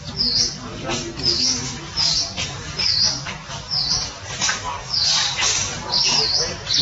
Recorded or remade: recorded